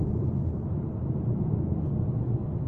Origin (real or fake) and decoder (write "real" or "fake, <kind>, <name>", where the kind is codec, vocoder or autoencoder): real